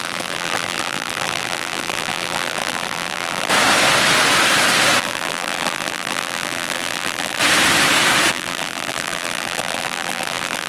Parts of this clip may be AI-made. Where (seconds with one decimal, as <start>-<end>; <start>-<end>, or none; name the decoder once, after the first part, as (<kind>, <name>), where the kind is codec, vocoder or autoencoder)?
0.0-3.5 (vocoder, BigVGAN v2); 5.0-7.4; 8.3-10.7